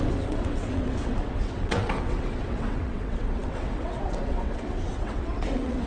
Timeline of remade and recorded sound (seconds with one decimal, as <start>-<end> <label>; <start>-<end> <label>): 0.0-5.9 remade